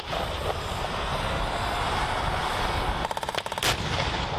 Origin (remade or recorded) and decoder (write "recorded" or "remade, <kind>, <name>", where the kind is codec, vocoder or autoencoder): recorded